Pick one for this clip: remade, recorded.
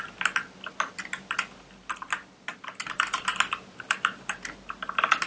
recorded